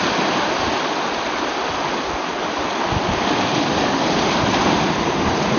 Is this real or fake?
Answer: real